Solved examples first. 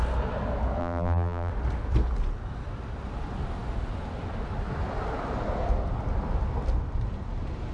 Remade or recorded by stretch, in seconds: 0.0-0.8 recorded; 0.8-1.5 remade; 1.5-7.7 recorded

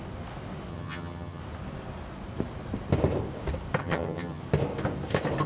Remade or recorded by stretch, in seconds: 0.0-0.7 recorded; 0.7-1.4 remade; 1.4-3.8 recorded; 3.8-4.4 remade; 4.4-5.5 recorded

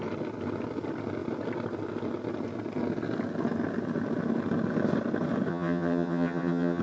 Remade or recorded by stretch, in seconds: 0.0-5.5 recorded; 5.5-6.8 remade

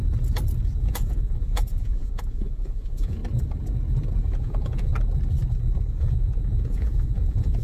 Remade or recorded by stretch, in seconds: 0.0-0.8 recorded; 0.8-3.2 remade; 3.2-4.3 recorded; 4.3-4.9 remade; 4.9-5.9 recorded; 5.9-7.6 remade

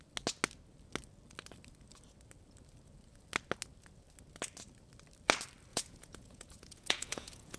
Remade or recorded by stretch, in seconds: 0.0-5.7 recorded; 5.7-7.6 remade

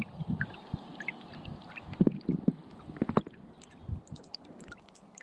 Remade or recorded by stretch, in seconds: 0.0-5.2 recorded